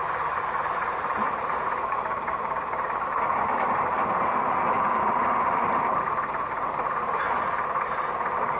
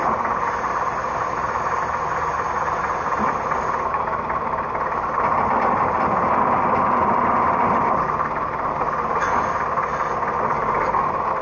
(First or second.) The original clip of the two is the second